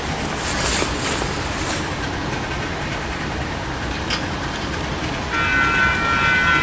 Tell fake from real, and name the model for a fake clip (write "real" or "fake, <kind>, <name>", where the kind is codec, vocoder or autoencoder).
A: real